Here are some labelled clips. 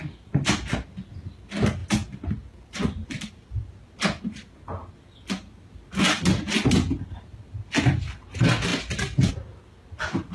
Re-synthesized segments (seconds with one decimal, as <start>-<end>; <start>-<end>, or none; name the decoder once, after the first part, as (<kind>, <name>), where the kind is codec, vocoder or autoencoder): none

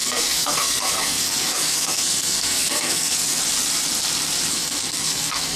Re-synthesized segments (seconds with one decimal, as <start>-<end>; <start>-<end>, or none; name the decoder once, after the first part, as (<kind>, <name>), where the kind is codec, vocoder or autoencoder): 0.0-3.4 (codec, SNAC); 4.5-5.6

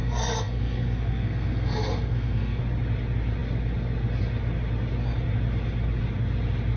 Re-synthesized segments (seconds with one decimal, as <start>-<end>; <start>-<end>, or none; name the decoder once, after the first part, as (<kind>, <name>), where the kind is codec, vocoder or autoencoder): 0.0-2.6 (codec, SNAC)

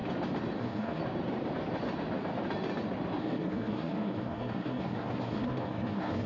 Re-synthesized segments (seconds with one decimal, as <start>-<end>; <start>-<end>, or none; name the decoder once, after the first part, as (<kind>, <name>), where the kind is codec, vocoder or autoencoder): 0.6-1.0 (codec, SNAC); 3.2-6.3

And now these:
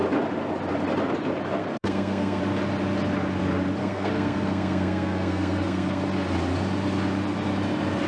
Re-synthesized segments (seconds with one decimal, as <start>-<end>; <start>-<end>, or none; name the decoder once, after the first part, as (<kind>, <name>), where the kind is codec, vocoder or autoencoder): 1.6-2.4 (codec, SNAC); 3.8-6.0

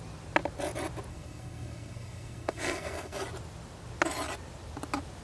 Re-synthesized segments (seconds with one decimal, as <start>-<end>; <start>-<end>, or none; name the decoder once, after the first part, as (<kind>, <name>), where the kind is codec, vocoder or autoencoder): 1.1-3.2 (codec, SNAC)